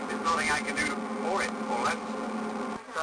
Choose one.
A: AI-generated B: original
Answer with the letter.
B